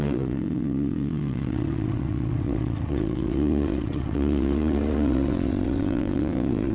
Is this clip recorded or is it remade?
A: remade